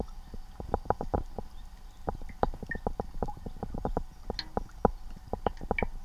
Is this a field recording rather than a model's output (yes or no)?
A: yes